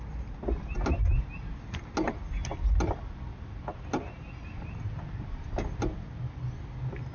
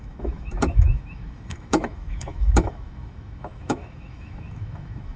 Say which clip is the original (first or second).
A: first